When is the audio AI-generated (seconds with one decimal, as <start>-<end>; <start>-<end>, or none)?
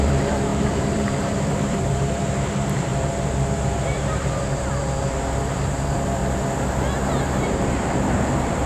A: 0.0-6.2; 7.2-8.7